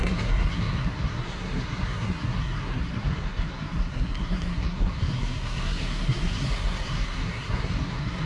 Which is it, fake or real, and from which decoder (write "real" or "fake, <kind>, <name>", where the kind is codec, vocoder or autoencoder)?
fake, codec, SNAC